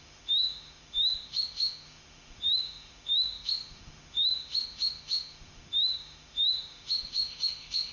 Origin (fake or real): fake